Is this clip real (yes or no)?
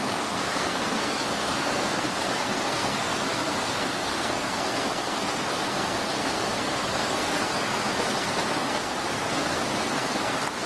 no